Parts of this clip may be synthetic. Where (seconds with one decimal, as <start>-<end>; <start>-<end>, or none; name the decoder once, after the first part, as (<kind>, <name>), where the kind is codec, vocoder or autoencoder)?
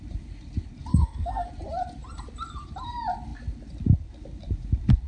0.9-1.5 (codec, SNAC)